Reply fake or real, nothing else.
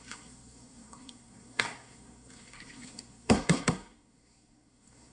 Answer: fake